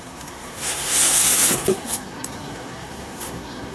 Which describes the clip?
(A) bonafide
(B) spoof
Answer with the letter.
B